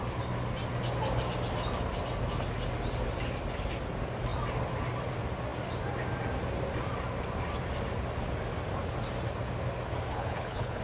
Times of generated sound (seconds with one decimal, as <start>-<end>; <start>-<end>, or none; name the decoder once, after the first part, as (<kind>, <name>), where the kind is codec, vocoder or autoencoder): 10.1-10.8 (codec, HILCodec)